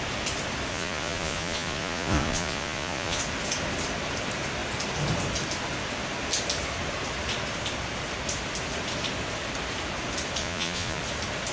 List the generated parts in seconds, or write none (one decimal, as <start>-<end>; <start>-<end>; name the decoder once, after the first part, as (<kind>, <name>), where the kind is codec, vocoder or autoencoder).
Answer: 0.7-3.2 (vocoder, Vocos); 10.4-11.0